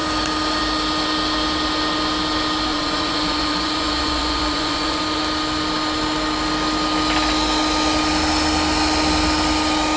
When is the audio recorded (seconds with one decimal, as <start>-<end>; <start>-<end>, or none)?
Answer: 0.0-2.7; 5.0-10.0